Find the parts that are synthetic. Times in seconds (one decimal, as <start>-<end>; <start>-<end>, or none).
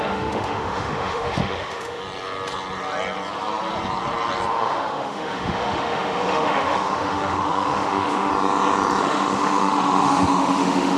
0.0-2.0; 4.5-8.3; 9.0-11.0